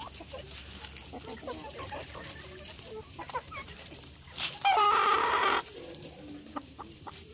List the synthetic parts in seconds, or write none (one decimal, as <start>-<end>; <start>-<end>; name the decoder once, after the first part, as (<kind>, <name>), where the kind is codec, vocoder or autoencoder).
0.0-0.4 (vocoder, BigVGAN v2); 1.1-2.0; 3.2-7.3